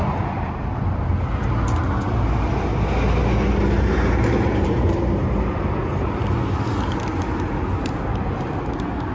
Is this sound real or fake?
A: real